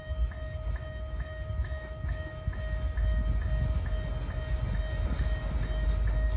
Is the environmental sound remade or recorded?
recorded